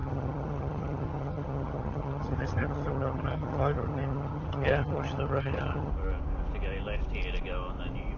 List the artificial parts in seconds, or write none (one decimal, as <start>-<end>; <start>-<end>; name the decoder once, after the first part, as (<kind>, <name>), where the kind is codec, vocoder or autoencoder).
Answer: 0.0-5.9 (vocoder, HiFi-GAN)